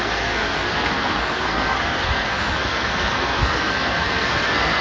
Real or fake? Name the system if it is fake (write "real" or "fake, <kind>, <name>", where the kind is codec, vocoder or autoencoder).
fake, codec, SNAC